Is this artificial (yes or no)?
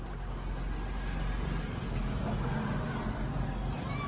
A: no